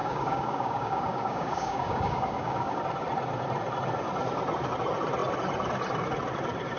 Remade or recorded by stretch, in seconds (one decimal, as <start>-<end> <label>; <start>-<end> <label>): 0.0-2.8 remade; 2.8-6.8 recorded